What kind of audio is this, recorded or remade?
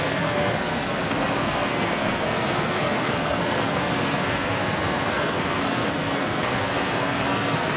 remade